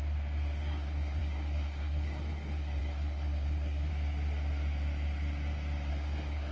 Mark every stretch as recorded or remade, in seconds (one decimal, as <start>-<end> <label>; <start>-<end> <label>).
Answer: 0.0-0.6 recorded; 0.6-3.9 remade; 3.9-5.9 recorded; 5.9-6.5 remade